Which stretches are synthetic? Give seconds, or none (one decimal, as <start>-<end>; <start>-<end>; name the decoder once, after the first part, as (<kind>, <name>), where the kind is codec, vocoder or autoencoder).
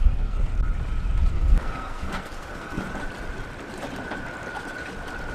0.0-0.5 (codec, SNAC); 1.3-2.8